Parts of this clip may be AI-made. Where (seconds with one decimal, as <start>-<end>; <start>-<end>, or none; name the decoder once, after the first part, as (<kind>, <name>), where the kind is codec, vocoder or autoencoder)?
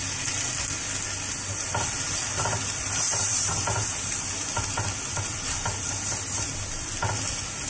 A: 3.1-3.6 (vocoder, BigVGAN v2)